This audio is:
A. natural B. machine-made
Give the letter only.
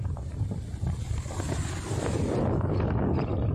A